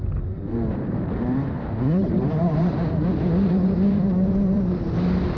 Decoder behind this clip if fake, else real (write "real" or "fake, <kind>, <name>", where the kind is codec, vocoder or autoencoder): fake, vocoder, BigVGAN v2